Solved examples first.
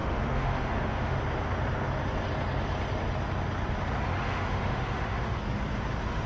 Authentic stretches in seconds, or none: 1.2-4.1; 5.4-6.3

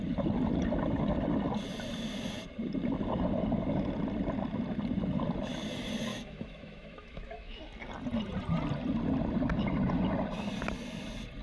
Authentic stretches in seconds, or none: 0.0-6.1; 7.6-11.4

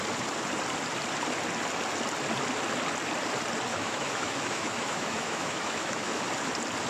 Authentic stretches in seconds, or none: 0.0-3.7; 6.2-6.9

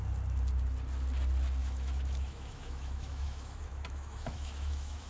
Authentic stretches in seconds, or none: 0.0-1.6